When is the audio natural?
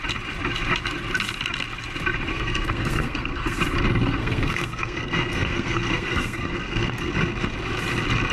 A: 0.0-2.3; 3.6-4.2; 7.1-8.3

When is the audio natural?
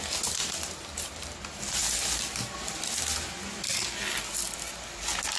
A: 0.0-5.4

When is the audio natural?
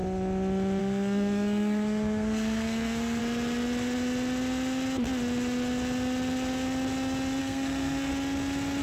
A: 0.0-0.8; 3.2-7.4; 8.1-8.8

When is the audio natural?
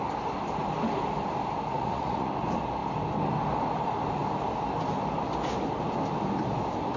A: 0.0-1.7; 2.3-7.0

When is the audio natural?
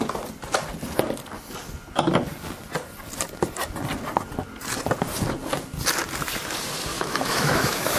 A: 0.0-6.9